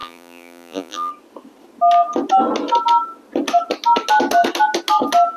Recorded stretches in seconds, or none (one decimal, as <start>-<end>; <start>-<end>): 1.1-5.4